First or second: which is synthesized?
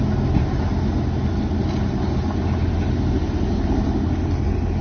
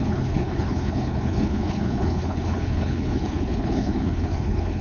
second